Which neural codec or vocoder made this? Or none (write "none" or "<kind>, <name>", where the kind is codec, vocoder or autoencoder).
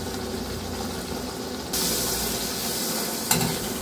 none